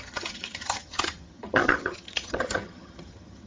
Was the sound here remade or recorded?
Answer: remade